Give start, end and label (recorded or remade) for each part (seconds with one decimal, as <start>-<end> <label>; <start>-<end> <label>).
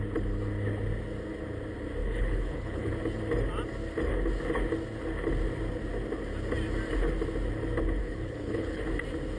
0.0-2.0 recorded; 2.0-2.9 remade; 2.9-8.0 recorded; 8.0-8.8 remade; 8.8-9.4 recorded